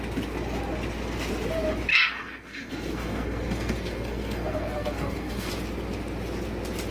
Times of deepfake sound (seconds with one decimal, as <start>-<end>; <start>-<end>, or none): 1.9-5.5